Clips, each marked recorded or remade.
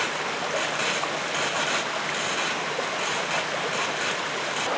recorded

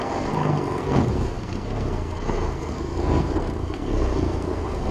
remade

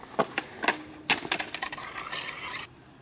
recorded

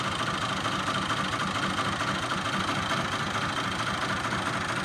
recorded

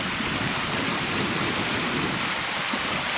recorded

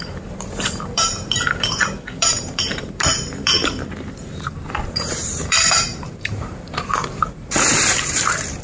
remade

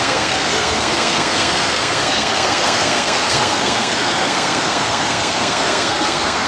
remade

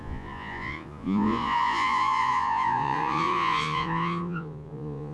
remade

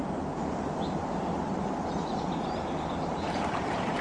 remade